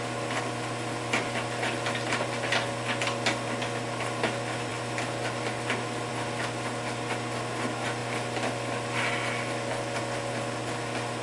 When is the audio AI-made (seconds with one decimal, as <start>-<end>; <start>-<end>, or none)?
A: none